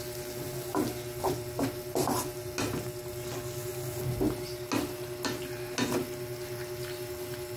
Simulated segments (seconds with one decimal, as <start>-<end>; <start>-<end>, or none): none